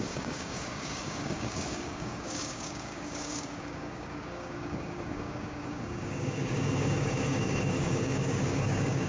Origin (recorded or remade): remade